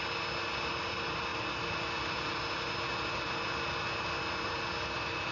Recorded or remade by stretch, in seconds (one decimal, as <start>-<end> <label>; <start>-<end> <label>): 0.0-5.3 recorded